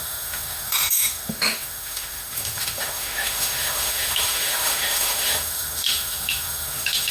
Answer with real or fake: fake